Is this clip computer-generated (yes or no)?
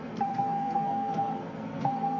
yes